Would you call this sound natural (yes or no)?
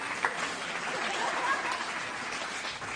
yes